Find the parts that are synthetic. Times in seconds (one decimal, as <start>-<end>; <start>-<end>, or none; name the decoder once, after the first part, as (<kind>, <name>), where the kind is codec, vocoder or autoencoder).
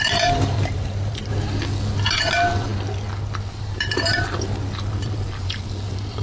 0.0-1.3 (vocoder, BigVGAN v2); 2.1-2.7; 3.5-6.2